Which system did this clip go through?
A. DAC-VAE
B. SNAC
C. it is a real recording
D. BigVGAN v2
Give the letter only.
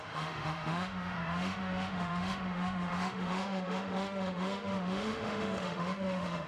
A